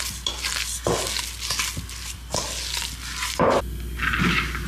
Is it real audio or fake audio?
real